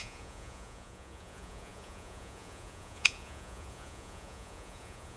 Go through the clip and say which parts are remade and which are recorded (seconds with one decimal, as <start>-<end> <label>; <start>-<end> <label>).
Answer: 0.0-5.2 remade